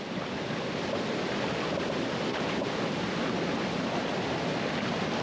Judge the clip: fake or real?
real